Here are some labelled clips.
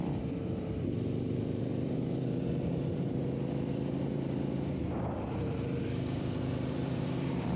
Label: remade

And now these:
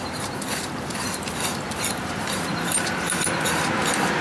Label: remade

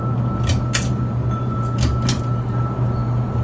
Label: recorded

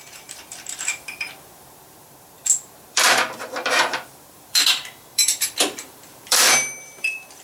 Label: remade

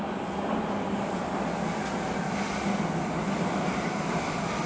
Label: recorded